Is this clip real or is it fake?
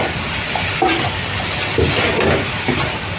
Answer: real